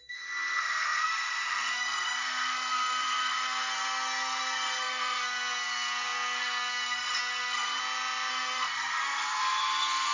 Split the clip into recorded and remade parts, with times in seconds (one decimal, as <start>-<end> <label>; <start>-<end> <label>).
0.0-7.8 remade; 7.8-8.3 recorded; 8.3-10.1 remade